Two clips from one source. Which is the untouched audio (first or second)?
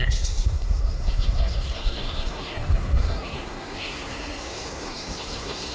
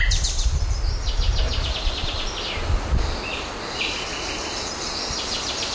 second